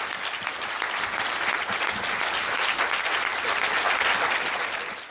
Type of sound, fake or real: real